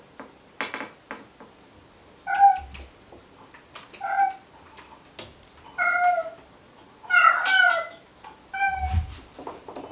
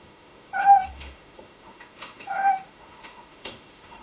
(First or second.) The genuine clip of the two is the first